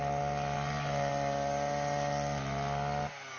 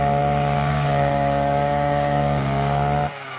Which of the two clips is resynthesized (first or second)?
second